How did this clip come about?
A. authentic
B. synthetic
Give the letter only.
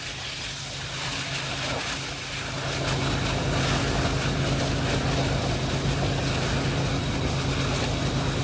A